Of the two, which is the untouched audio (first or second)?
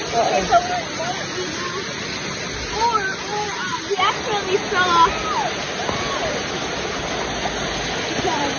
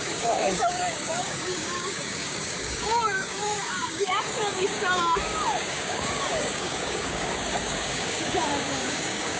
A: first